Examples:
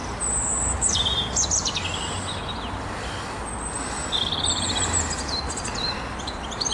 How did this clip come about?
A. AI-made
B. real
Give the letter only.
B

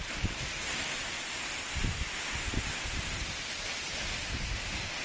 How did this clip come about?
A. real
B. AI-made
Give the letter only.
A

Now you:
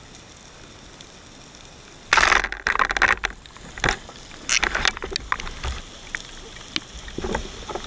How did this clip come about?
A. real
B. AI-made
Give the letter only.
A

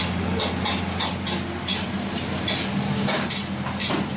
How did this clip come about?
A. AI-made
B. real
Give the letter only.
B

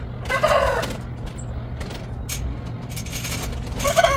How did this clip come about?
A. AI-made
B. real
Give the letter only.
B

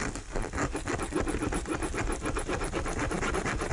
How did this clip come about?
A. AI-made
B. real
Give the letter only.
B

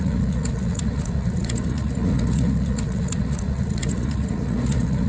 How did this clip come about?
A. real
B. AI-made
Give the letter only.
B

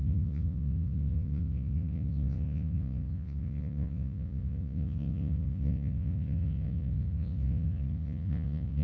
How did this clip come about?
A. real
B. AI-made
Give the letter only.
B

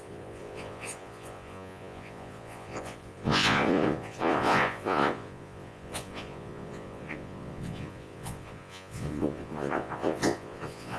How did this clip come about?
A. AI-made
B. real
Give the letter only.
A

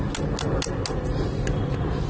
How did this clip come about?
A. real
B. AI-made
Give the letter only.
A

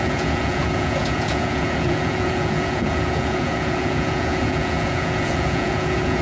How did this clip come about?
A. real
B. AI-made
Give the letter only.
B